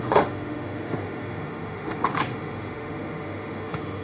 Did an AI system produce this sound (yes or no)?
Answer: yes